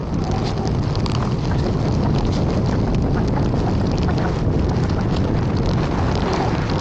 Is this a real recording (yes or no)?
yes